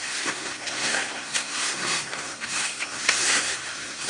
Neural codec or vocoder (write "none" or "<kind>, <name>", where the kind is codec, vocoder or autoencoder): codec, SNAC